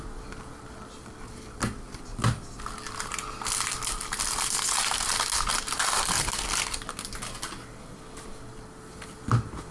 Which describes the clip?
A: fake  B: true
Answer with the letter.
B